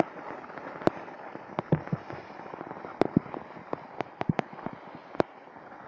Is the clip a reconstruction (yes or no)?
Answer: no